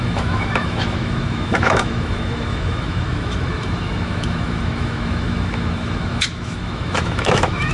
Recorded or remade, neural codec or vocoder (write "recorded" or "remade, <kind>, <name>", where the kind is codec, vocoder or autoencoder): remade, autoencoder, DAC-VAE